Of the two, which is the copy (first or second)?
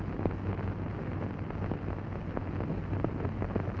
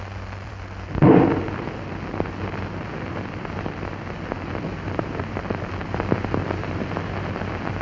second